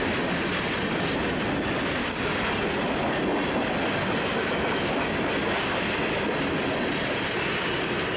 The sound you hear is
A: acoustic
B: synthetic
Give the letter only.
A